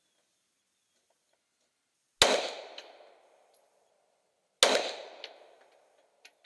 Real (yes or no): yes